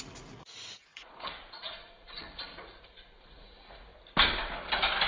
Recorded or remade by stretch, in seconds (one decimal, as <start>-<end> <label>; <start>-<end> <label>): 0.0-3.9 remade; 3.9-5.1 recorded